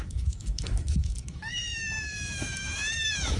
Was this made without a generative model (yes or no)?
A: no